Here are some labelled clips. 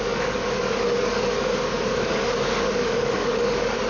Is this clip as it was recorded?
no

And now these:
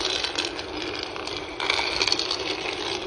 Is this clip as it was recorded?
yes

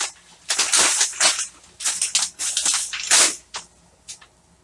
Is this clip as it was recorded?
yes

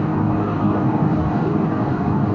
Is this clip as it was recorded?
no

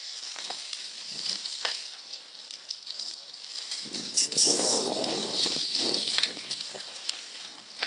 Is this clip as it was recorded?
no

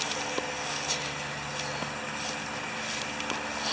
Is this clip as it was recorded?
yes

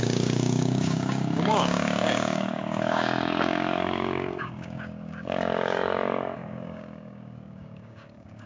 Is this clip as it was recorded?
no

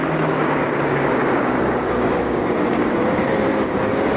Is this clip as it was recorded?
no